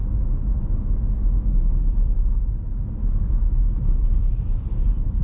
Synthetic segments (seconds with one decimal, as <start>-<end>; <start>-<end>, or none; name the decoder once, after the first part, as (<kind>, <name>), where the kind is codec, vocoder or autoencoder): none